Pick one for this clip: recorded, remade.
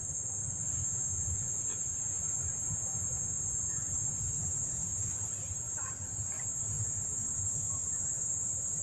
remade